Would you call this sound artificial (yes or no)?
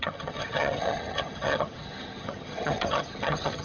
yes